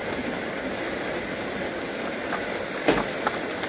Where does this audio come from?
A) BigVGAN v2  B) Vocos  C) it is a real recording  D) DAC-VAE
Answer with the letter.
C